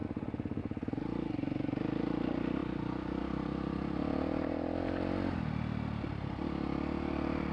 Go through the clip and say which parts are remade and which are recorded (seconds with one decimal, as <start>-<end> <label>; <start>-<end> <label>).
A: 0.0-7.5 recorded